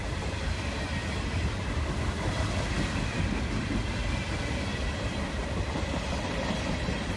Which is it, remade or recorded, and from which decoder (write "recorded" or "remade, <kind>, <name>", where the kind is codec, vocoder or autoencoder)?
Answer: recorded